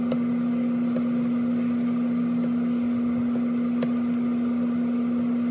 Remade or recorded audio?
recorded